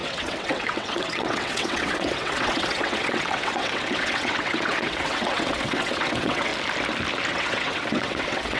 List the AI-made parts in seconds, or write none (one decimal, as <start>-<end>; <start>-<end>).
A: 0.0-6.5; 7.3-8.6